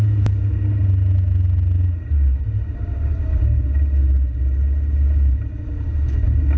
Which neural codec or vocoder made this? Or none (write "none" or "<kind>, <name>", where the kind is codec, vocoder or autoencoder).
none